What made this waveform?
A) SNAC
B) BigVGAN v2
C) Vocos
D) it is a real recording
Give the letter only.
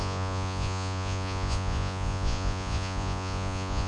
C